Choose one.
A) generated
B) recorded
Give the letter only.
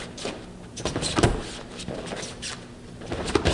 B